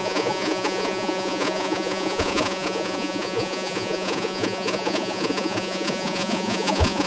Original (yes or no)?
no